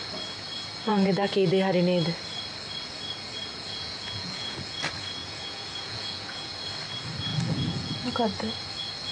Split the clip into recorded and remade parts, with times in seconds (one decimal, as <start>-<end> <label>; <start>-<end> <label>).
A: 0.0-0.9 recorded; 0.9-1.5 remade; 1.5-3.5 recorded; 3.5-4.8 remade; 4.8-5.2 recorded; 5.2-6.5 remade; 6.5-7.3 recorded; 7.3-8.1 remade; 8.1-9.1 recorded